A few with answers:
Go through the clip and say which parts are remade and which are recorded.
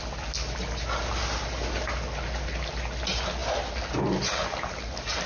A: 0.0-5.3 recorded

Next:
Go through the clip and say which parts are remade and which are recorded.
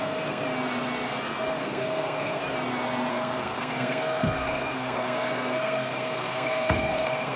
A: 0.0-0.4 remade; 0.4-1.5 recorded; 1.5-2.4 remade; 2.4-3.1 recorded; 3.1-7.4 remade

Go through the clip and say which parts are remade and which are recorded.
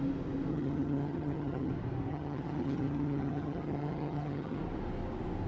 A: 0.0-0.5 recorded; 0.5-1.7 remade; 1.7-2.1 recorded; 2.1-4.6 remade; 4.6-5.5 recorded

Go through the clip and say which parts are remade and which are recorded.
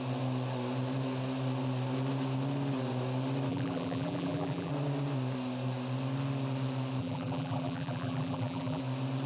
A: 0.0-3.5 recorded; 3.5-4.7 remade; 4.7-7.0 recorded; 7.0-8.8 remade; 8.8-9.3 recorded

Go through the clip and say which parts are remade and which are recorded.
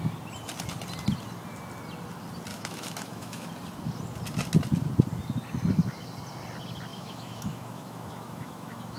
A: 0.0-2.5 recorded; 2.5-3.5 remade; 3.5-6.9 recorded; 6.9-9.0 remade